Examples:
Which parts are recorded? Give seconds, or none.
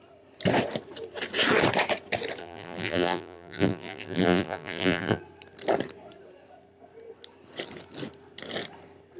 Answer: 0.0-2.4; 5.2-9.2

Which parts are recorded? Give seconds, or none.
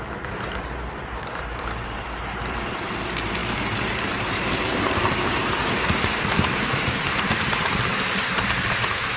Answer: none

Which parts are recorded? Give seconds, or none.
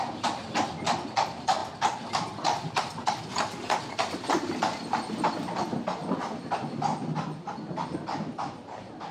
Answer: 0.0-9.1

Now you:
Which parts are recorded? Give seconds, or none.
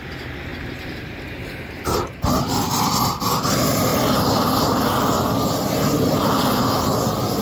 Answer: 0.0-0.5; 1.7-7.4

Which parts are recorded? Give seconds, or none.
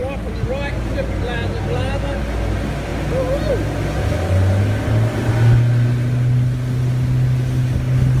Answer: 0.0-8.2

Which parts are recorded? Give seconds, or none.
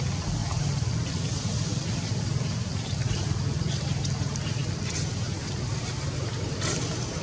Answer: 0.0-0.4; 0.9-1.7; 2.3-7.2